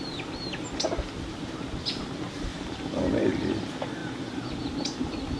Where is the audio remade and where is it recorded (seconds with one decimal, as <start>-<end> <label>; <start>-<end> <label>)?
0.0-2.5 recorded; 2.5-3.6 remade; 3.6-4.0 recorded; 4.0-5.4 remade